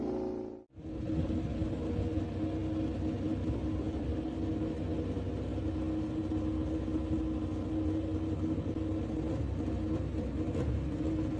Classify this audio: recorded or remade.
recorded